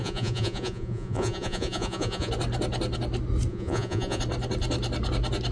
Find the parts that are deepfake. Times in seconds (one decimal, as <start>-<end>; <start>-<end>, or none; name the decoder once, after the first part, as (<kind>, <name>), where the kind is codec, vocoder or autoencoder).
0.0-2.3 (vocoder, Vocos); 3.5-4.2